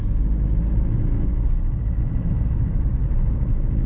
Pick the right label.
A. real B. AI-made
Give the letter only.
A